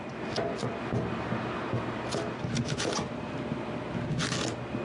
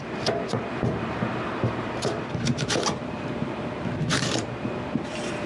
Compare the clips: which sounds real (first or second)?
first